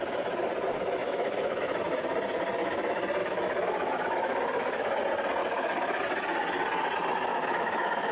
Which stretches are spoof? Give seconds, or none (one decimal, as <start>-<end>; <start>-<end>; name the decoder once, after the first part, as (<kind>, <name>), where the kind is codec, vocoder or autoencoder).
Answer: 1.0-1.8 (autoencoder, DAC-VAE); 3.2-5.0; 5.4-6.0; 7.3-8.1